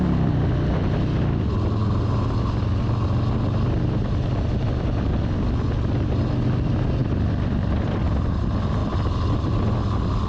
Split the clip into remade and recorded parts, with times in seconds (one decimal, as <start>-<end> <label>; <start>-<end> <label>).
0.0-7.0 recorded; 7.0-8.4 remade; 8.4-8.8 recorded; 8.8-9.7 remade; 9.7-10.3 recorded